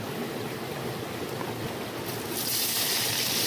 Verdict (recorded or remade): recorded